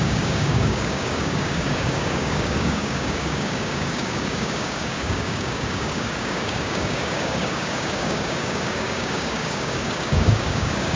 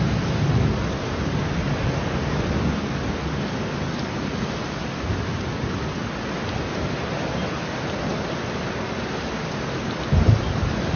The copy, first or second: first